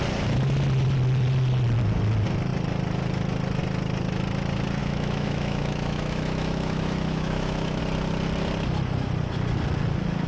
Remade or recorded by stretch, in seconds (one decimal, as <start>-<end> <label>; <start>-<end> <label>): 0.0-4.8 recorded; 4.8-7.8 remade; 7.8-10.3 recorded